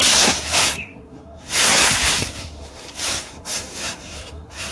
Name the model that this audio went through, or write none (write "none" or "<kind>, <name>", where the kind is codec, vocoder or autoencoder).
codec, SNAC